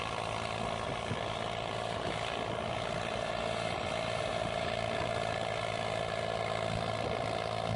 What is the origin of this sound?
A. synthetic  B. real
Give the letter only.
B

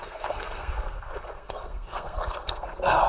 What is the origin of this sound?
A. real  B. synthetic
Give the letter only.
B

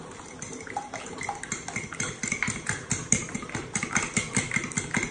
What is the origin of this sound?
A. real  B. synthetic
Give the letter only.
A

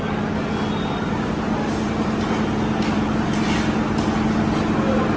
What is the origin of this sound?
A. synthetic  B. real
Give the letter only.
B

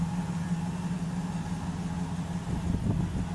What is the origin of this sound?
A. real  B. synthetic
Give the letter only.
A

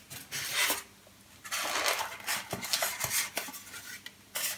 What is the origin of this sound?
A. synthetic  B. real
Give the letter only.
B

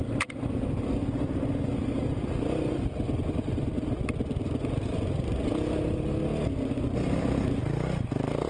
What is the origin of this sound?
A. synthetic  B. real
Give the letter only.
B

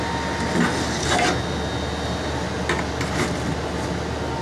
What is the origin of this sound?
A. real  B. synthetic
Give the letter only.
A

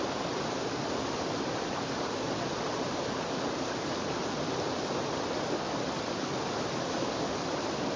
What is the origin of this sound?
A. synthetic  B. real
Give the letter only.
B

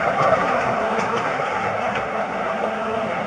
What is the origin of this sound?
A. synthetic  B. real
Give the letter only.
A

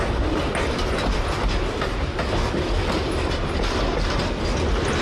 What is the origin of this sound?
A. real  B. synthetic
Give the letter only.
A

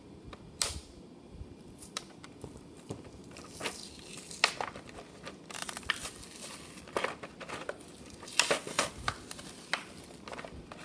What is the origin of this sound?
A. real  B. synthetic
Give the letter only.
A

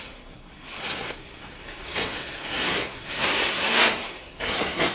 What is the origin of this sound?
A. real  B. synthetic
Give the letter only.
B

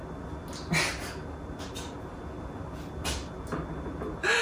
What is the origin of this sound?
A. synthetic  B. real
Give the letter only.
B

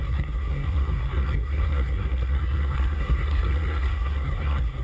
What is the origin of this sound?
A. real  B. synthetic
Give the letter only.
B